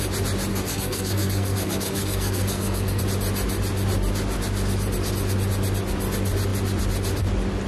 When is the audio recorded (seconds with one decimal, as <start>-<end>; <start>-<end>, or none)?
0.0-0.5; 3.0-7.7